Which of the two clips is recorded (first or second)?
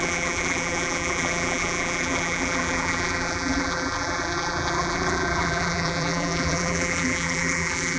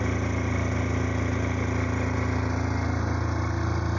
second